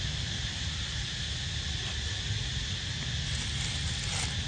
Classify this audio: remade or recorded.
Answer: recorded